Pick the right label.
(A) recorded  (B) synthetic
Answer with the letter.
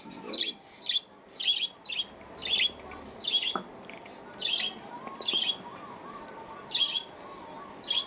A